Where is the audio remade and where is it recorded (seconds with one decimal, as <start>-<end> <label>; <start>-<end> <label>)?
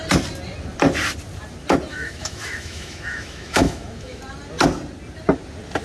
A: 0.0-1.9 recorded; 1.9-4.2 remade; 4.2-5.8 recorded